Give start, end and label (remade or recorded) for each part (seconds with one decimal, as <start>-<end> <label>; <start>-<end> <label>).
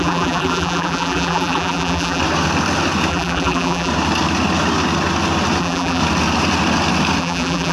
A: 0.0-2.2 remade; 2.2-3.1 recorded; 3.1-3.9 remade; 3.9-5.6 recorded; 5.6-6.0 remade; 6.0-7.2 recorded; 7.2-7.7 remade